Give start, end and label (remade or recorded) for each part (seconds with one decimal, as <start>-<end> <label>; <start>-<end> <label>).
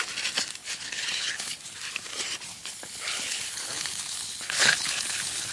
0.0-0.6 recorded; 0.6-1.6 remade; 1.6-2.5 recorded; 2.5-5.5 remade